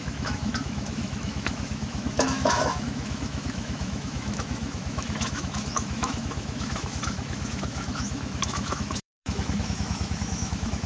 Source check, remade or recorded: remade